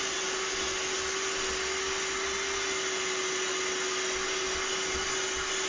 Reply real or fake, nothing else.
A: real